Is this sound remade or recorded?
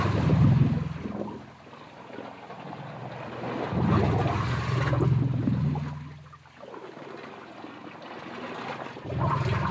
recorded